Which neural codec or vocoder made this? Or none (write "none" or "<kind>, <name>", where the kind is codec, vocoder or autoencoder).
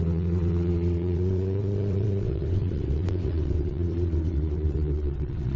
vocoder, WaveNeXt